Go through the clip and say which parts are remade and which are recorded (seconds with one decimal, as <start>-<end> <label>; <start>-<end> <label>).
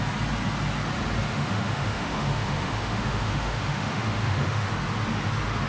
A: 0.0-1.3 recorded; 1.3-4.7 remade; 4.7-5.7 recorded